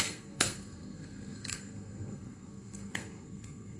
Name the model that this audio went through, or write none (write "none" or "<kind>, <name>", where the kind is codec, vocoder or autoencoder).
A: codec, SNAC